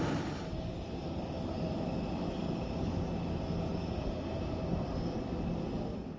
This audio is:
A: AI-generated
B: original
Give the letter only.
B